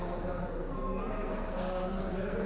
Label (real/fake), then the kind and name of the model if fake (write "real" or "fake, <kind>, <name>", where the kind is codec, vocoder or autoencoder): fake, codec, SNAC